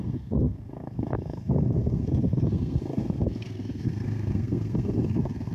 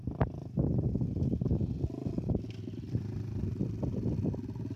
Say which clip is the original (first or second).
second